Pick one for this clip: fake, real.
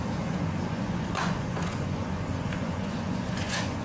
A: fake